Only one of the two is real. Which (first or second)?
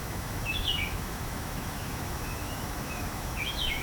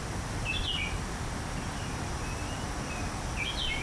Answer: second